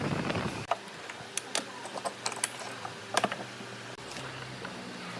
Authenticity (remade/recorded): recorded